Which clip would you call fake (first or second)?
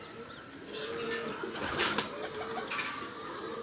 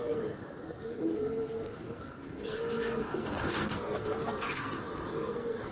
second